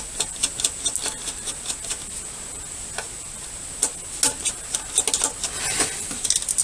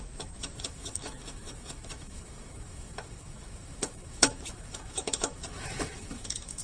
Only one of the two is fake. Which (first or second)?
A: second